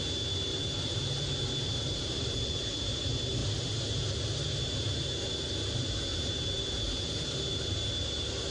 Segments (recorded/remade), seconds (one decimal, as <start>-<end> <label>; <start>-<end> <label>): 0.0-0.5 recorded; 0.5-3.0 remade; 3.0-6.1 recorded; 6.1-7.4 remade; 7.4-8.5 recorded